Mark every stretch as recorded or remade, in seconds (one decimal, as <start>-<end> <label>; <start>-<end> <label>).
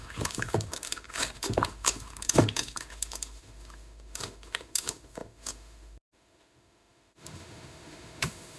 0.0-8.6 remade